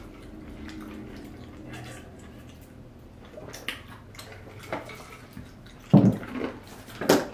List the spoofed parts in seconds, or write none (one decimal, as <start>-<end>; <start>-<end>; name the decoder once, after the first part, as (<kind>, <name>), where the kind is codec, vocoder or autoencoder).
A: none